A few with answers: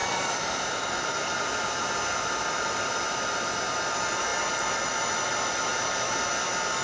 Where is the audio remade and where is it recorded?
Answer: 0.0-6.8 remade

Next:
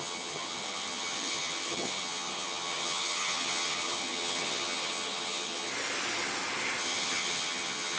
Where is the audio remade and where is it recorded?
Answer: 0.0-5.7 remade; 5.7-6.8 recorded; 6.8-8.0 remade

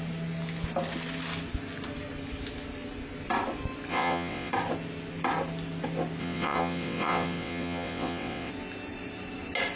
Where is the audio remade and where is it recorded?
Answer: 0.0-3.9 recorded; 3.9-4.5 remade; 4.5-6.2 recorded; 6.2-8.5 remade; 8.5-9.8 recorded

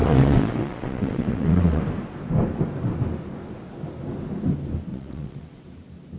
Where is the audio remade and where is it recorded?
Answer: 0.0-1.8 remade; 1.8-4.9 recorded; 4.9-5.6 remade; 5.6-6.2 recorded

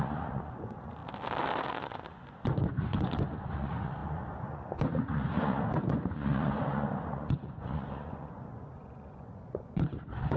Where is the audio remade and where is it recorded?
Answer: 0.0-1.0 remade; 1.0-1.7 recorded; 1.7-10.4 remade

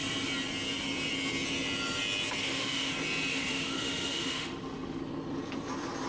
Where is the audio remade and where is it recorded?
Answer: 0.0-2.4 recorded; 2.4-2.9 remade; 2.9-3.3 recorded; 3.3-5.0 remade; 5.0-6.1 recorded

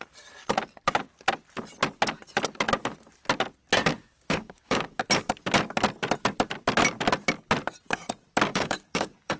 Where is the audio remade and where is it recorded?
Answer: 0.0-3.9 recorded; 3.9-5.0 remade; 5.0-8.5 recorded; 8.5-9.4 remade

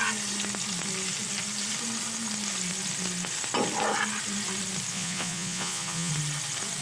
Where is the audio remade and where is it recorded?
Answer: 0.0-4.9 recorded; 4.9-6.1 remade; 6.1-6.8 recorded